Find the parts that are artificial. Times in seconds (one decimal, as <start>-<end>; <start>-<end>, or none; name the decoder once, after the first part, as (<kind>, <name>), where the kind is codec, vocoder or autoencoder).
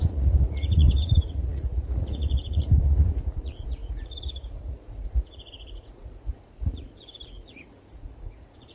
0.0-8.7 (vocoder, Vocos)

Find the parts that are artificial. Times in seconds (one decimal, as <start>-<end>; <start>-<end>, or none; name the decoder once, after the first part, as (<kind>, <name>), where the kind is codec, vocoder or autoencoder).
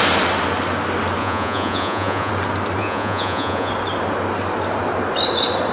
1.2-2.3 (vocoder, Vocos); 2.8-3.7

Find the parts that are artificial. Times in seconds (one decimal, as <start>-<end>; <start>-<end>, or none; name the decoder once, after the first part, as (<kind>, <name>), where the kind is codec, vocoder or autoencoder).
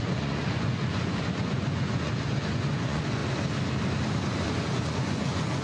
0.0-3.2 (vocoder, Vocos); 4.3-5.6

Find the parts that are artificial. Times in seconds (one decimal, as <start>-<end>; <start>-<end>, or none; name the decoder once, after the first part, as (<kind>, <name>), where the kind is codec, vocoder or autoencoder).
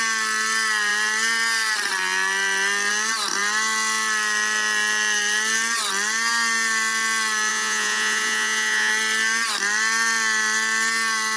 7.5-8.9 (vocoder, Vocos)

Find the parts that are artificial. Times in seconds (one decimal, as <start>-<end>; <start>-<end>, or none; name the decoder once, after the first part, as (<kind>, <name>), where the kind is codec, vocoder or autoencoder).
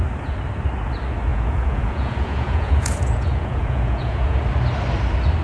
1.3-4.4 (vocoder, Vocos)